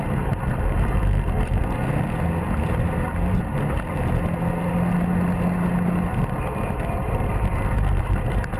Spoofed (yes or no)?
no